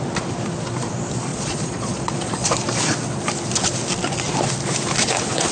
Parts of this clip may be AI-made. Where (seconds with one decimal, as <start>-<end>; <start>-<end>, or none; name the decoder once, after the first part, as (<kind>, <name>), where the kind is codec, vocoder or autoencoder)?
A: 1.3-2.5 (vocoder, Vocos)